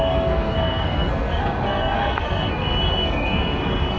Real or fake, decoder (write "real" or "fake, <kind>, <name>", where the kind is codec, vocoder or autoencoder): fake, codec, SNAC